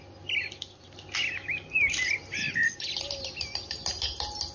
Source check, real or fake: real